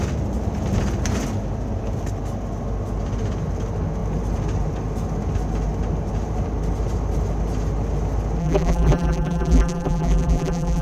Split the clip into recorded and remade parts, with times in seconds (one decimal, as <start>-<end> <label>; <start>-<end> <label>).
0.0-8.4 recorded; 8.4-10.8 remade